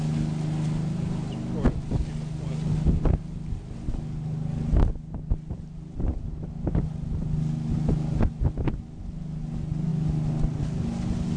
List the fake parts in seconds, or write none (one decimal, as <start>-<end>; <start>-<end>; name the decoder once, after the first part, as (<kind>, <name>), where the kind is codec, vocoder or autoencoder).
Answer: none